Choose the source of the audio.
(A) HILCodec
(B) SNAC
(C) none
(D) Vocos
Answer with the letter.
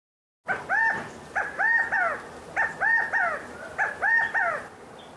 C